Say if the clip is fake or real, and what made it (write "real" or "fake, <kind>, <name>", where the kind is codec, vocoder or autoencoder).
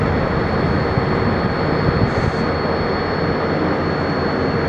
real